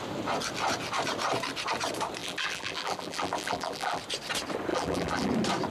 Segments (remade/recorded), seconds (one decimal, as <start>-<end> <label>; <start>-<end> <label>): 0.0-2.2 recorded; 2.2-4.0 remade; 4.0-4.7 recorded; 4.7-5.3 remade; 5.3-5.7 recorded